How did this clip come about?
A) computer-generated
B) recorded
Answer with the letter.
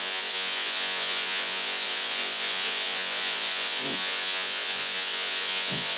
A